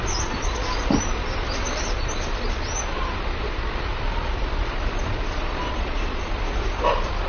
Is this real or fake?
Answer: fake